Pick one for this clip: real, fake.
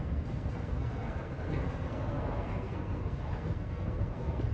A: fake